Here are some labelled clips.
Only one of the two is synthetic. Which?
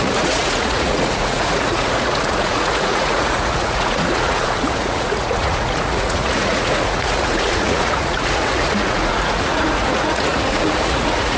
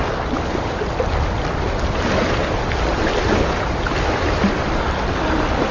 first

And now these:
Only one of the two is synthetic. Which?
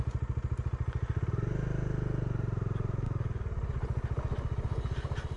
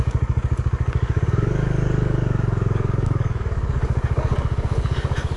second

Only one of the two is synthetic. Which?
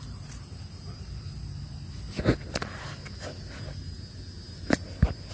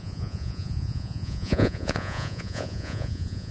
second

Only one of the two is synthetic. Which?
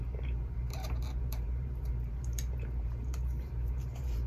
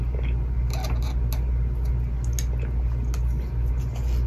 first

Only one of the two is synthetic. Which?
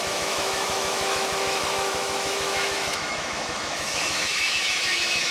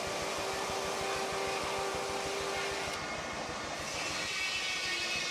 first